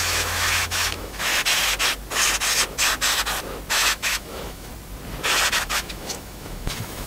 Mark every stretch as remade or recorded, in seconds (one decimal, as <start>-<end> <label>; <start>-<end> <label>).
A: 0.0-1.3 remade; 1.3-3.7 recorded; 3.7-4.7 remade; 4.7-5.5 recorded; 5.5-7.1 remade